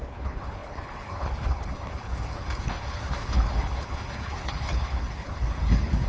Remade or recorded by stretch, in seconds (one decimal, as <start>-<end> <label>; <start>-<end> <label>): 0.0-6.1 remade